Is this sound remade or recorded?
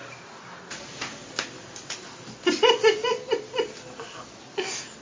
recorded